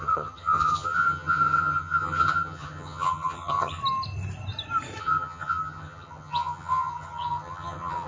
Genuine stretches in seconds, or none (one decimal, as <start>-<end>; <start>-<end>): 3.8-5.0

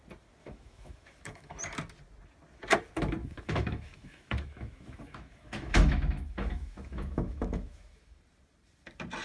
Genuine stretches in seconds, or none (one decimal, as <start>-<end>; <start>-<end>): 0.0-0.4; 1.6-3.2; 8.2-9.2

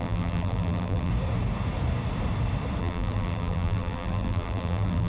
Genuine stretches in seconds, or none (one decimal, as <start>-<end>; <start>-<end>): 1.1-2.8